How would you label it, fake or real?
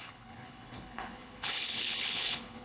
fake